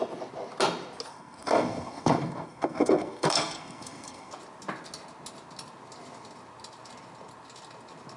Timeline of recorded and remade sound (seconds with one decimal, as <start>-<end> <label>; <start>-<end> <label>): 0.0-1.1 recorded; 1.1-4.3 remade; 4.3-8.2 recorded